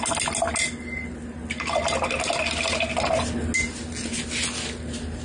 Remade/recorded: recorded